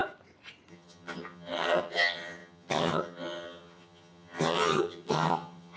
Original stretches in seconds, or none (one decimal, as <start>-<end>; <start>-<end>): 0.0-0.7